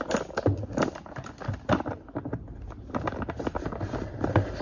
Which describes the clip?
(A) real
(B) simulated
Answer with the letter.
A